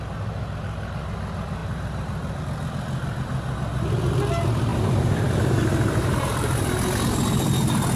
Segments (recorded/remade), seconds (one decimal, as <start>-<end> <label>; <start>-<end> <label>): 0.0-4.7 recorded; 4.7-6.7 remade; 6.7-8.0 recorded